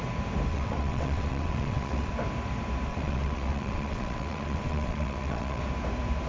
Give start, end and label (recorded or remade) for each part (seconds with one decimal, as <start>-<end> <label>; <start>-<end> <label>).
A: 0.0-0.5 recorded; 0.5-2.1 remade; 2.1-2.9 recorded; 2.9-5.6 remade; 5.6-6.3 recorded